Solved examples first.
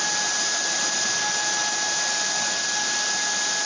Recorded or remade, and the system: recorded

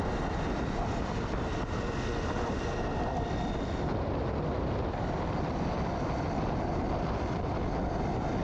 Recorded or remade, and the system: recorded